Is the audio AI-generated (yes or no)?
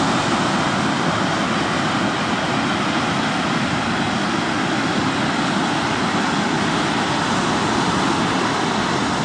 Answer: no